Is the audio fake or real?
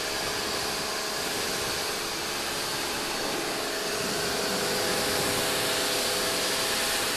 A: real